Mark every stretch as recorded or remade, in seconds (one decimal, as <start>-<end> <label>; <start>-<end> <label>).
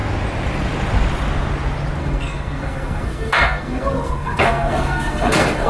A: 0.0-2.0 recorded; 2.0-5.7 remade